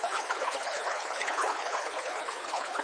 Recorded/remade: remade